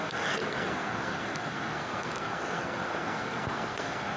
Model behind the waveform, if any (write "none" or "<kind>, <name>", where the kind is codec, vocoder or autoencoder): codec, SNAC